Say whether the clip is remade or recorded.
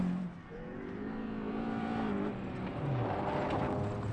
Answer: recorded